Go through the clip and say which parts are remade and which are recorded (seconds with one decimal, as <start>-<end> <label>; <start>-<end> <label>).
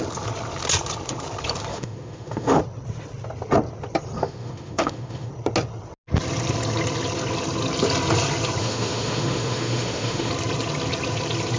0.0-1.7 recorded; 1.7-2.6 remade; 2.6-4.2 recorded; 4.2-5.3 remade; 5.3-8.6 recorded; 8.6-10.3 remade; 10.3-11.6 recorded